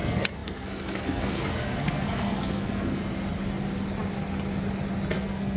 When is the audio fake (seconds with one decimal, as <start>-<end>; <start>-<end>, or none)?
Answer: 0.0-3.0; 5.1-5.6

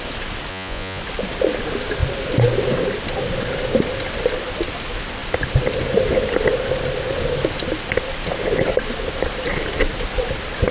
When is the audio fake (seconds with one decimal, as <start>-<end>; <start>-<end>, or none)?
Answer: 0.5-1.0

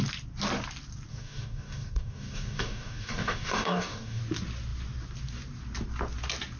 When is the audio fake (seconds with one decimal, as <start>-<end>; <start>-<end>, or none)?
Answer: 1.1-4.2

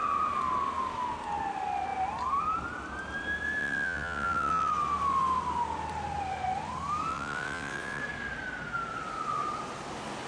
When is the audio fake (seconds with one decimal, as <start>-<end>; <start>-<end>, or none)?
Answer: 3.6-4.7; 7.1-8.0

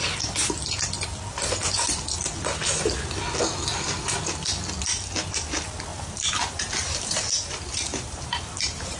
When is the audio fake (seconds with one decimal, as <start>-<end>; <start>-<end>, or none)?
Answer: 5.9-9.0